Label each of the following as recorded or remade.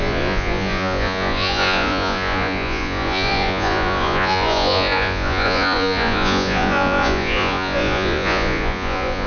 remade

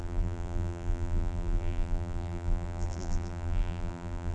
remade